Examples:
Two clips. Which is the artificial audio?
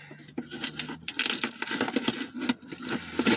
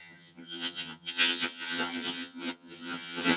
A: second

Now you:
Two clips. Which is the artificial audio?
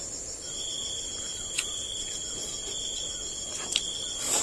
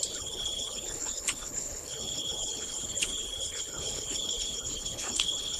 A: second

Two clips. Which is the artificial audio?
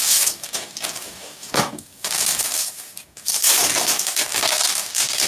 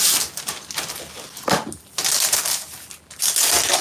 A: first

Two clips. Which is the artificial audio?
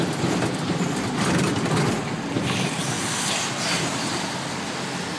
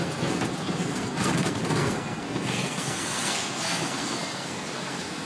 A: second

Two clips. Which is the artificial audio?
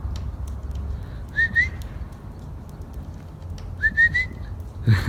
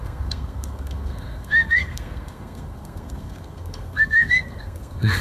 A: second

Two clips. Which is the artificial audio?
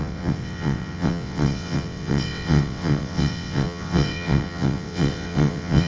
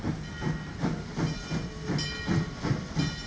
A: first